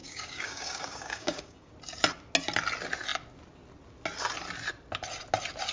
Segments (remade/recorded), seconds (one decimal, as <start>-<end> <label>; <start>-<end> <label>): 0.0-1.7 remade; 1.7-5.7 recorded